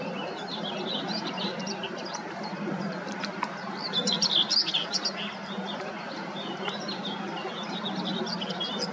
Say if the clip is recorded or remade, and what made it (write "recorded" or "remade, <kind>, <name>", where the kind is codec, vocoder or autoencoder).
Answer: remade, vocoder, BigVGAN v2